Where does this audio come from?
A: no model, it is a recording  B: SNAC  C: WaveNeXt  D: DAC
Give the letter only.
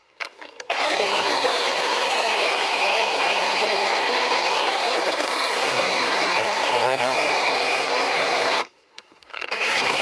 B